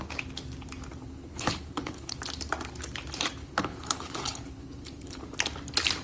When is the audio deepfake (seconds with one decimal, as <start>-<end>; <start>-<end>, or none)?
1.0-2.2; 3.4-5.2